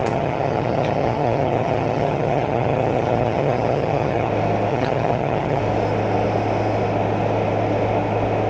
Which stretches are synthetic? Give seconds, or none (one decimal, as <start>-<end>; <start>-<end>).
0.0-4.3; 4.7-5.6